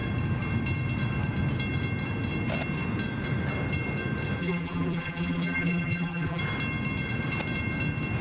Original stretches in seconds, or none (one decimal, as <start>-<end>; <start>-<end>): 0.0-4.4; 6.4-8.2